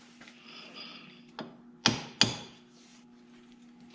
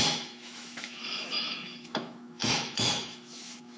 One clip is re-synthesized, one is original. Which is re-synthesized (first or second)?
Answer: second